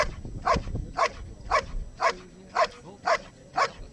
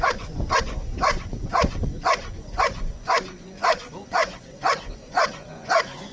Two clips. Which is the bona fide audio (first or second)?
first